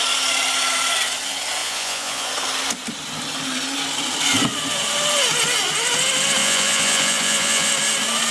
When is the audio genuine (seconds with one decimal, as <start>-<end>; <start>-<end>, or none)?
0.0-1.6; 2.3-6.4; 7.7-8.3